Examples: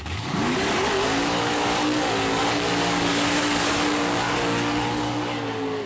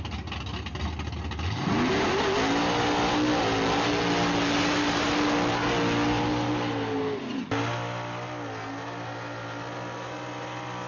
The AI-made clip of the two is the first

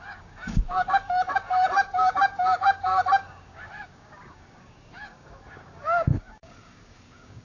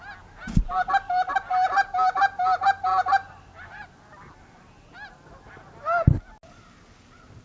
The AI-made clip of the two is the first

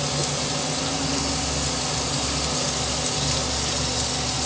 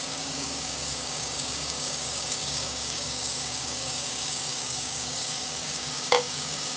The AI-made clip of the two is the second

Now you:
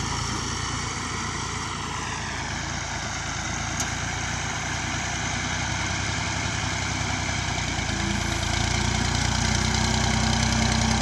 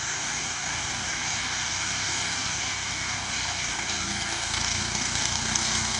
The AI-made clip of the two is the second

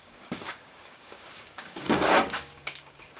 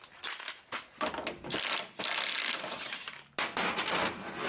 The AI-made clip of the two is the first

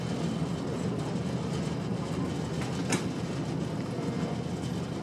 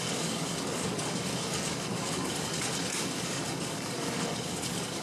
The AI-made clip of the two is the second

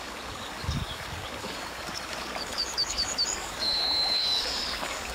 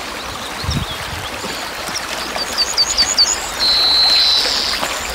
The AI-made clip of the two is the first